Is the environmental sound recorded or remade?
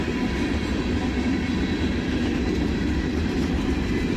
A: recorded